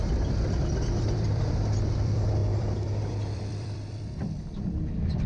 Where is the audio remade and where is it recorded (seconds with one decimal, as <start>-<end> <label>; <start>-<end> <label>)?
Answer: 0.0-5.3 remade